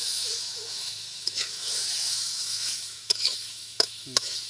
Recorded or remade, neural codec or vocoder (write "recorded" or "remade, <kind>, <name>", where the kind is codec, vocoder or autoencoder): remade, autoencoder, DAC-VAE